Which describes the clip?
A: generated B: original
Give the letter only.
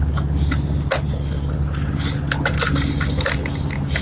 B